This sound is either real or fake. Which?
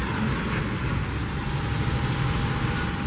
real